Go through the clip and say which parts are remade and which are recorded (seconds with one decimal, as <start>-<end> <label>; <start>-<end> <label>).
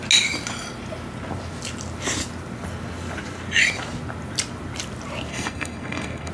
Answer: 0.0-5.3 recorded; 5.3-6.3 remade